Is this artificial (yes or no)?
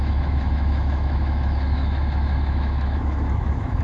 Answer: yes